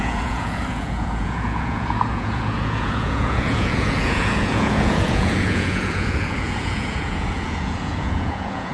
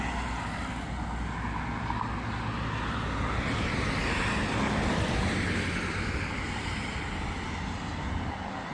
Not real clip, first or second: first